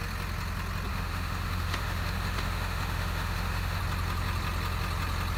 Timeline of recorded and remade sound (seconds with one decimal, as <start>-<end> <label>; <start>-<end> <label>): 0.0-0.9 recorded; 0.9-3.8 remade; 3.8-5.4 recorded